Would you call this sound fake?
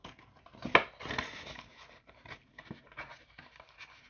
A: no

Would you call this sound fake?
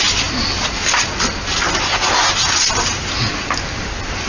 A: no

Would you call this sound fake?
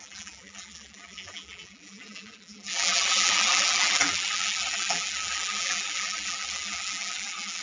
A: yes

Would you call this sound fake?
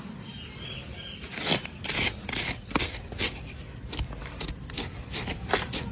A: no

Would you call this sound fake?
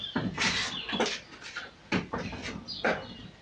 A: no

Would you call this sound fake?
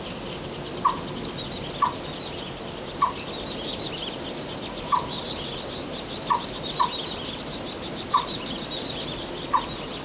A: no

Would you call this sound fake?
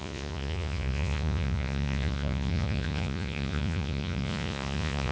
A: yes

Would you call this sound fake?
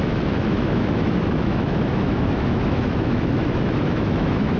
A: yes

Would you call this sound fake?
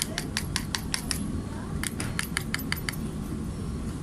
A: no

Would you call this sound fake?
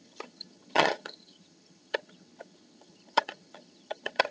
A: yes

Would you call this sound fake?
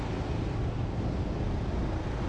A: no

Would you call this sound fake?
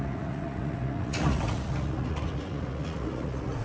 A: yes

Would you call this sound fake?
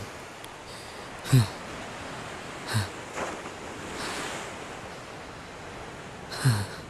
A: no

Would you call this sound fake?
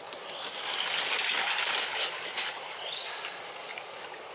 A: no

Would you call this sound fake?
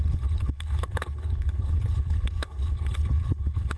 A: yes